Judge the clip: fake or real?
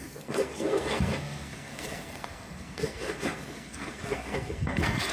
fake